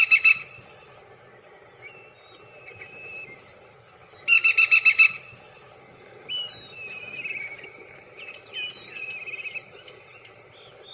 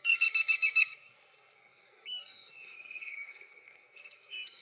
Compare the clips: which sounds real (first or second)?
first